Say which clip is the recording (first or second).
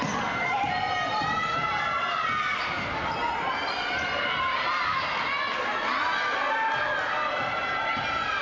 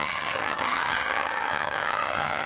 first